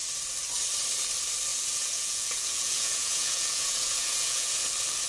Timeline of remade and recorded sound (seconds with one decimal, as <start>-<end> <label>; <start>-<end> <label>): 0.0-1.5 recorded; 1.5-4.6 remade; 4.6-5.1 recorded